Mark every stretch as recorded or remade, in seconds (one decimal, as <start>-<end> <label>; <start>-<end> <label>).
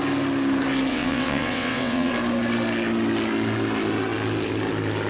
0.0-0.9 recorded; 0.9-2.1 remade; 2.1-5.1 recorded